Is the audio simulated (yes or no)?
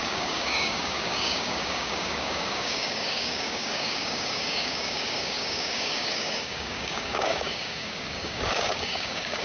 yes